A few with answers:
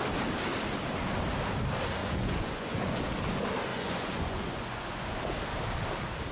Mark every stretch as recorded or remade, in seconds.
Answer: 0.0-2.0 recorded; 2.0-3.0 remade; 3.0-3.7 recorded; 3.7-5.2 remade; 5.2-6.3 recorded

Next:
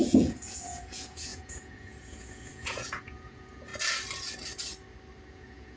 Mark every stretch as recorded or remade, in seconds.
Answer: 0.0-3.7 remade; 3.7-5.3 recorded; 5.3-5.8 remade

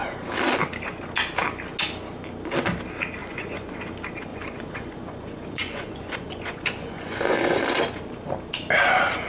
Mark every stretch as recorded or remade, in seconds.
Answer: 0.0-3.2 recorded; 3.2-3.8 remade; 3.8-4.3 recorded; 4.3-7.6 remade; 7.6-9.3 recorded

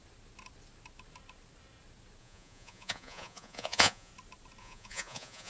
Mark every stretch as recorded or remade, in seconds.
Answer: 0.0-2.2 recorded; 2.2-4.1 remade; 4.1-4.6 recorded; 4.6-5.5 remade

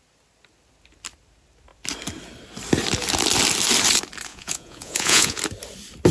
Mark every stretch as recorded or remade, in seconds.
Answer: 0.0-4.3 recorded; 4.3-5.4 remade; 5.4-6.1 recorded

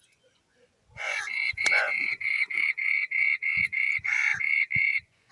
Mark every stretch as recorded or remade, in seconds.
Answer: 0.0-5.3 remade

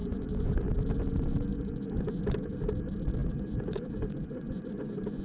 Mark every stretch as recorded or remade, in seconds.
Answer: 0.0-0.7 remade; 0.7-1.5 recorded; 1.5-2.2 remade; 2.2-3.2 recorded; 3.2-5.2 remade